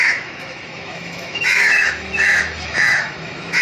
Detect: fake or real fake